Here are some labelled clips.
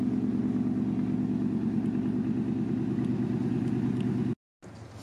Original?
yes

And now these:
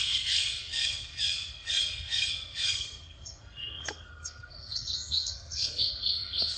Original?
no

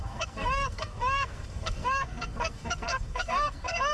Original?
no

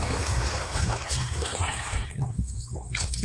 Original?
no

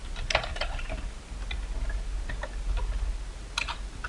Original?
yes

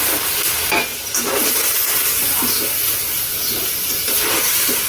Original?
yes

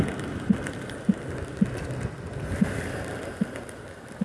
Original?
yes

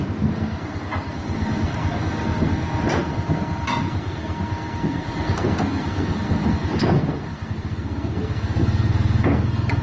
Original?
no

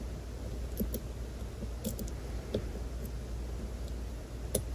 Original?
yes